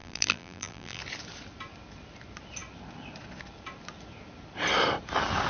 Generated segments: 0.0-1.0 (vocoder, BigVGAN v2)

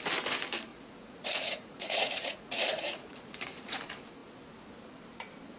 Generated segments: 0.7-3.8 (vocoder, Vocos)